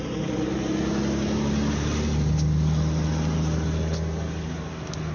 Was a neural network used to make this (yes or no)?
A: no